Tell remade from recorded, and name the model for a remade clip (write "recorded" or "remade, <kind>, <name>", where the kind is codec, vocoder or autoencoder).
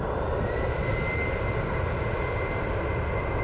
recorded